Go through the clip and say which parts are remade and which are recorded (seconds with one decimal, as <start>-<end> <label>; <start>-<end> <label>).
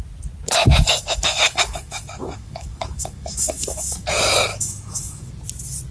0.0-0.6 recorded; 0.6-4.1 remade; 4.1-4.5 recorded; 4.5-5.3 remade; 5.3-5.9 recorded